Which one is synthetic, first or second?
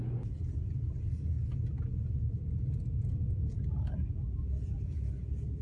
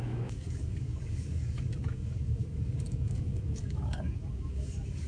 second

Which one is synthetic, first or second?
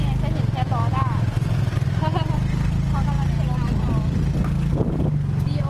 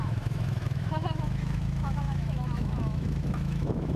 second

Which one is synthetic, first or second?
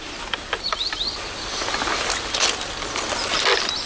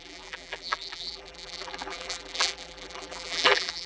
second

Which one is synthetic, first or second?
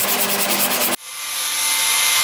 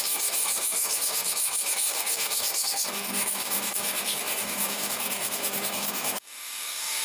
second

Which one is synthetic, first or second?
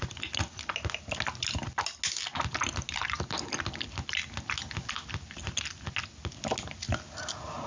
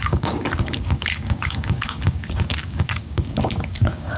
second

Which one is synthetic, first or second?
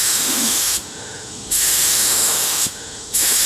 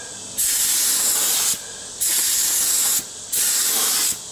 first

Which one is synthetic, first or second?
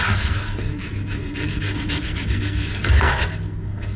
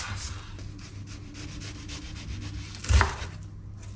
first